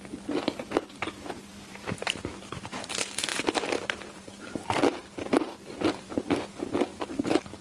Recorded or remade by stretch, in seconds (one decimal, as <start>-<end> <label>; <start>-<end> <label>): 0.0-1.5 recorded; 1.5-2.9 remade; 2.9-3.3 recorded; 3.3-6.2 remade; 6.2-6.9 recorded; 6.9-7.6 remade